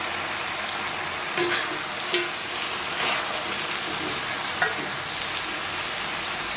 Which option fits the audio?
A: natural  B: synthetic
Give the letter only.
A